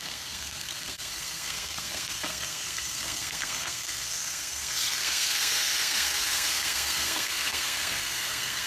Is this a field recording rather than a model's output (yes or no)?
no